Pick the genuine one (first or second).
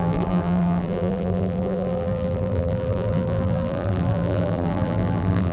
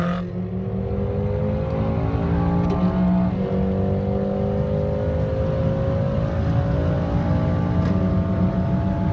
second